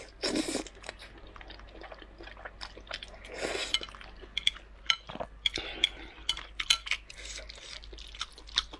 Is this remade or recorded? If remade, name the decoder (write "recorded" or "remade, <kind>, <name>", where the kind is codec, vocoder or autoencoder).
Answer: recorded